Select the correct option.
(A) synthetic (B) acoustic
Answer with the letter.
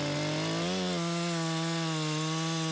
B